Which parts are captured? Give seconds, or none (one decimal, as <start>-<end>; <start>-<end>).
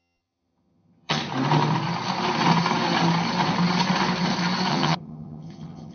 1.2-4.7